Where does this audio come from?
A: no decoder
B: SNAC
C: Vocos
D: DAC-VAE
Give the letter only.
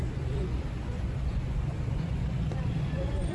C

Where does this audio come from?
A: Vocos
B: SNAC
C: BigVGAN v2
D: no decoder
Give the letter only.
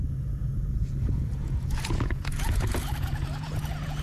A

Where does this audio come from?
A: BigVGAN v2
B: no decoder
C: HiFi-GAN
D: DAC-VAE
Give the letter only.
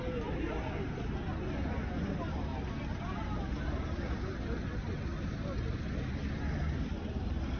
B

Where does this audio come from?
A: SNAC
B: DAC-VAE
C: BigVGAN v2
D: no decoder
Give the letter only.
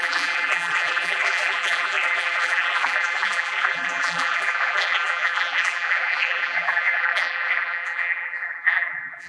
C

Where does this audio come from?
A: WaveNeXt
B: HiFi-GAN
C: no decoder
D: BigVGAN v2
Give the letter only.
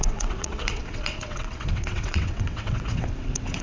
A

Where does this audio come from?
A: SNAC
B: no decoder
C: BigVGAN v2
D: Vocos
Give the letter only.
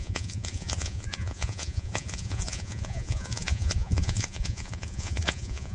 D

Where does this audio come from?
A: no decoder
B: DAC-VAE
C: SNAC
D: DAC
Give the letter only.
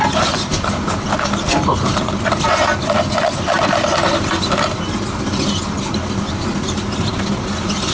A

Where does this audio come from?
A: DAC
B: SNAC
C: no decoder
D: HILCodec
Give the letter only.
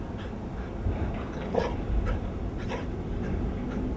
C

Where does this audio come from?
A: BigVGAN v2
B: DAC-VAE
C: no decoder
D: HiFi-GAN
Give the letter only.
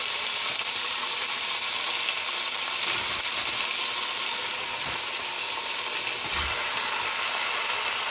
C